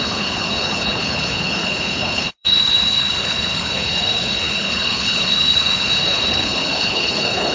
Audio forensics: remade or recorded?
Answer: remade